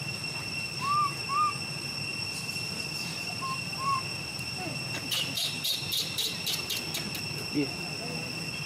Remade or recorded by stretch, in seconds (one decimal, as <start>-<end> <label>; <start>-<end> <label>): 0.0-2.1 recorded; 2.1-6.7 remade; 6.7-8.7 recorded